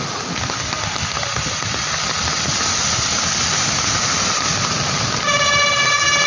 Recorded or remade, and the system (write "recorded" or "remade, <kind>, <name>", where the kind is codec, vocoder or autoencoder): recorded